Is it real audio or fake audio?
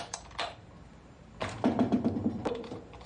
fake